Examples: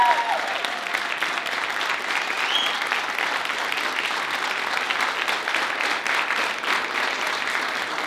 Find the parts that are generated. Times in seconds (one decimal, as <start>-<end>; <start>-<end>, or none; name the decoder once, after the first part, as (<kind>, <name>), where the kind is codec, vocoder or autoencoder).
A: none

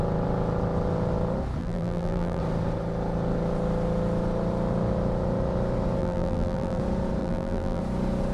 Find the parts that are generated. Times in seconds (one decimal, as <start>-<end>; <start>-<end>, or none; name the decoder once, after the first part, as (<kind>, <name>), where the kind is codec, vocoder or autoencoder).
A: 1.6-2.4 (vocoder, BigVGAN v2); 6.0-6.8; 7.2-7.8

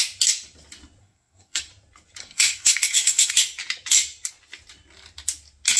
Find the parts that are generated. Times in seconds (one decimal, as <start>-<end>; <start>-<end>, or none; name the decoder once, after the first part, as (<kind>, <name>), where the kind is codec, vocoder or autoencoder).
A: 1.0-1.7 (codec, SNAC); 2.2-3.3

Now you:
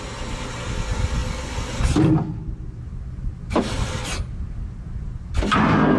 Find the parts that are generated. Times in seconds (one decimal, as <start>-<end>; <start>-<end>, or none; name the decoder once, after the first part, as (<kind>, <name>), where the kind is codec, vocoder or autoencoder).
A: none

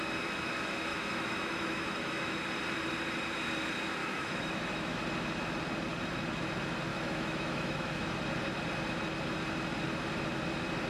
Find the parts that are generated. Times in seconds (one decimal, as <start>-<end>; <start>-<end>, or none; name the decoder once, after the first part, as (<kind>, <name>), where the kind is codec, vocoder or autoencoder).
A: 0.9-2.4 (autoencoder, DAC-VAE); 4.0-5.0; 6.9-8.2